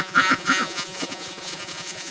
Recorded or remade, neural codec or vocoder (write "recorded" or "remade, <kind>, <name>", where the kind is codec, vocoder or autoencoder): remade, vocoder, Vocos